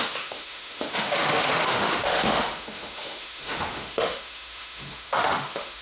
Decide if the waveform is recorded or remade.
remade